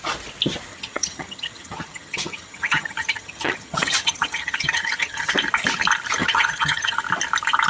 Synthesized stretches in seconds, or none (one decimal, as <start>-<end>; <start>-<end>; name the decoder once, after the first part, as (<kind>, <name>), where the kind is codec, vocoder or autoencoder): 0.7-5.3 (vocoder, HiFi-GAN); 6.2-7.0